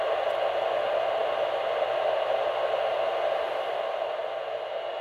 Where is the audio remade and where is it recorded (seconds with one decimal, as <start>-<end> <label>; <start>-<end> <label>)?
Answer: 0.0-5.0 recorded